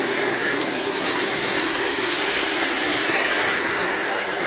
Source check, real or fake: fake